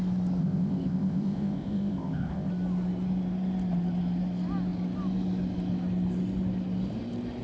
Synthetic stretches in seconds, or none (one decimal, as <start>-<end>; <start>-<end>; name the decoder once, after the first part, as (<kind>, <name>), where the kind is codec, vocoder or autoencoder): 0.4-2.5 (codec, ZipCodec)